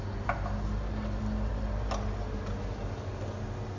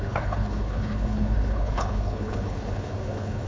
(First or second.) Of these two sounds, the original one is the first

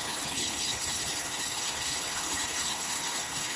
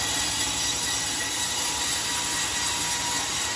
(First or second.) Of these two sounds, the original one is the second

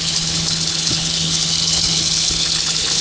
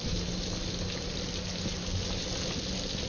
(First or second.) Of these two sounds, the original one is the second